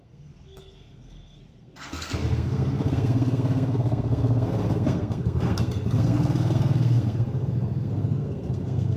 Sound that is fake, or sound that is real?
fake